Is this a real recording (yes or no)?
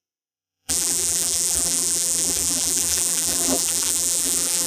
no